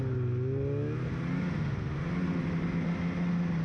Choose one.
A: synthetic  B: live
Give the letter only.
B